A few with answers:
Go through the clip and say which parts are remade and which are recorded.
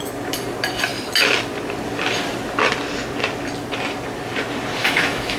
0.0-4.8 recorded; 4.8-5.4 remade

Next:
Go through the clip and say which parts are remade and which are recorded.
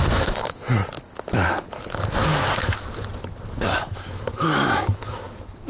0.0-0.8 remade; 0.8-4.1 recorded; 4.1-5.7 remade